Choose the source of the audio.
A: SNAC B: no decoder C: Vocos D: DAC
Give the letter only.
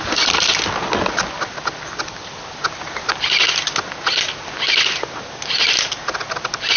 B